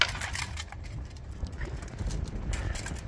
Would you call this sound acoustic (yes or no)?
yes